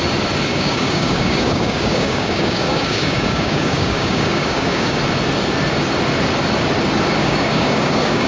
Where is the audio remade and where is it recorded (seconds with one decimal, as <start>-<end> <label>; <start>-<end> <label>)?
0.0-0.5 recorded; 0.5-5.0 remade; 5.0-7.2 recorded; 7.2-8.3 remade